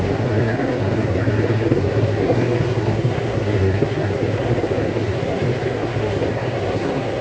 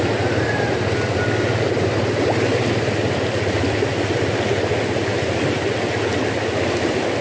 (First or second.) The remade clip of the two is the first